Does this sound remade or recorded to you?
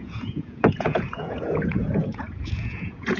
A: remade